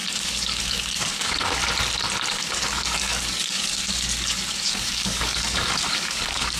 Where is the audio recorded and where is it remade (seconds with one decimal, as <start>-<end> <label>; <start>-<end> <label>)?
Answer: 0.0-1.6 remade; 1.6-2.3 recorded; 2.3-6.6 remade